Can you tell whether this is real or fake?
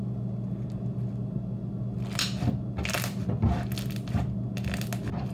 real